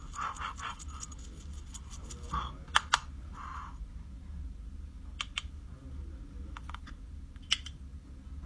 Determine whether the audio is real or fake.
real